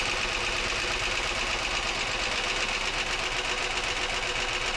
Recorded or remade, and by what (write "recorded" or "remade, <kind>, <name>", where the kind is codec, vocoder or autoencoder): recorded